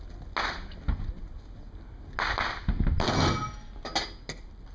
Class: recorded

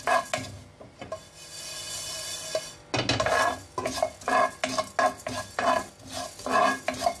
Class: recorded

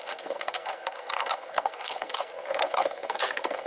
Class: remade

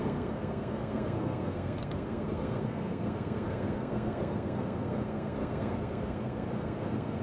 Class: remade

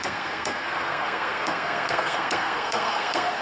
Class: remade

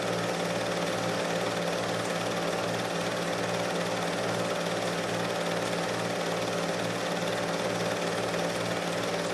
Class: recorded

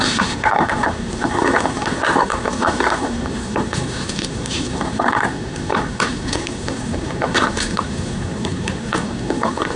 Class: remade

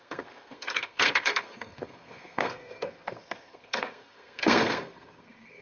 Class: remade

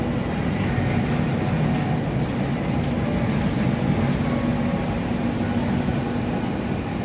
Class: recorded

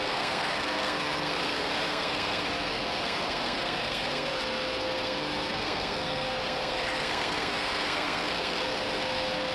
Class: remade